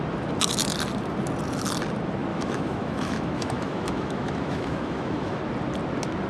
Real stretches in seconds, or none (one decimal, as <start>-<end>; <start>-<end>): 0.0-2.3; 5.4-6.3